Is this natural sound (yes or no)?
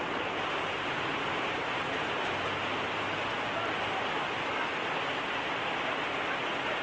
yes